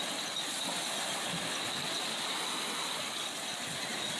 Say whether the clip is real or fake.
real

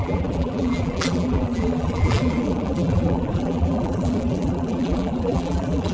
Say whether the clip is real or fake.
fake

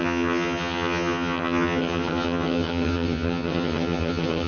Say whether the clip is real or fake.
fake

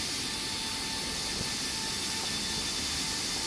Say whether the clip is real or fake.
real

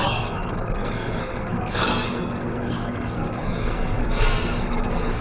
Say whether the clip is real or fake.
fake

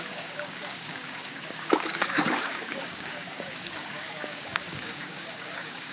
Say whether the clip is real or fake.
fake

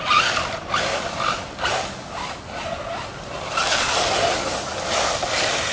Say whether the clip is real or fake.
real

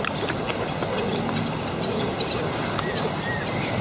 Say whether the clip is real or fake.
real